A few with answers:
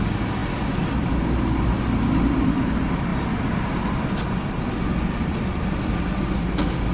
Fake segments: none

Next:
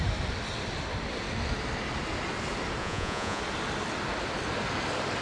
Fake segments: 2.8-3.4 (vocoder, Vocos)

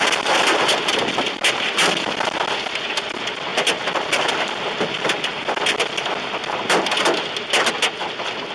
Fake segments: none

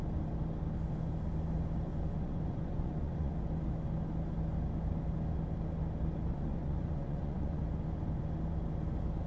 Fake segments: 1.9-3.3 (vocoder, Vocos); 6.3-7.6